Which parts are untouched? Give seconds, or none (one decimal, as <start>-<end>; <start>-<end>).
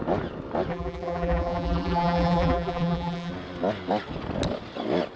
0.0-0.7; 3.3-5.2